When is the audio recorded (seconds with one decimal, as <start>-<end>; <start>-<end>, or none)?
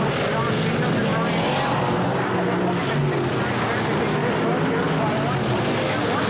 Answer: 0.0-4.2; 4.9-6.3